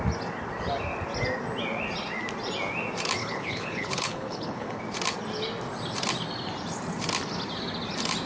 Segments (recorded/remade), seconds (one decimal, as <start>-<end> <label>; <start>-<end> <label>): 0.0-3.2 recorded; 3.2-4.8 remade; 4.8-8.3 recorded